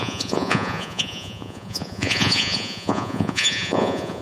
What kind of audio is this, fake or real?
fake